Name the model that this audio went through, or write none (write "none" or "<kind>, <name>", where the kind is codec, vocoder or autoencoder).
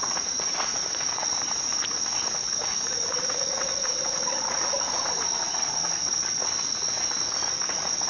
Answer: vocoder, Vocos